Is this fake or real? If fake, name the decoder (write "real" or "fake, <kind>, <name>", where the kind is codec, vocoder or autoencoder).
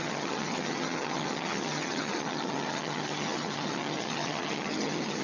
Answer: fake, vocoder, HiFi-GAN